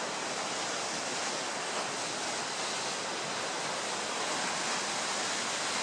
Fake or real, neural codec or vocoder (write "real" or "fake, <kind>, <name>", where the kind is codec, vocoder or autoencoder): real